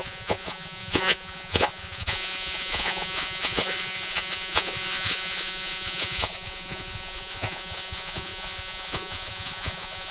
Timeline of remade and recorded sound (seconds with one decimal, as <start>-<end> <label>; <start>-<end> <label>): 0.0-10.1 remade

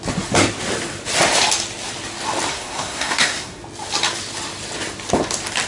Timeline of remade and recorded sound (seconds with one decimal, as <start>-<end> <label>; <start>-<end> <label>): 0.0-2.5 recorded; 2.5-3.6 remade; 3.6-5.7 recorded